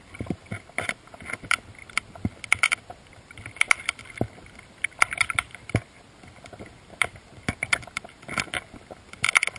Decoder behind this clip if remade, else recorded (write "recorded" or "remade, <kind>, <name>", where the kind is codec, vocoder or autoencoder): recorded